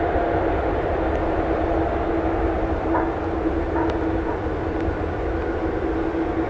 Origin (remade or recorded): recorded